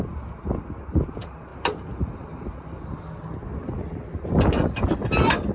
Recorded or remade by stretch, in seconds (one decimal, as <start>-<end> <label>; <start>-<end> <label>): 0.0-5.5 recorded